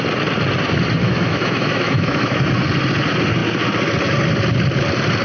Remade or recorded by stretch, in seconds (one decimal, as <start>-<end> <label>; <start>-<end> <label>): 0.0-1.0 recorded; 1.0-2.5 remade; 2.5-5.2 recorded